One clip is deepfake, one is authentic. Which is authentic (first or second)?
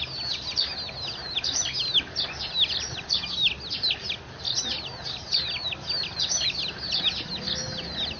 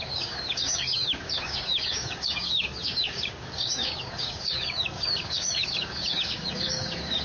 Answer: first